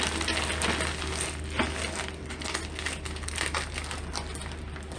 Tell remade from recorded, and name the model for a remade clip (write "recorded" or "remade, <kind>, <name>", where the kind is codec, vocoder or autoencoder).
recorded